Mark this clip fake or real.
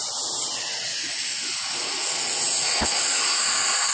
real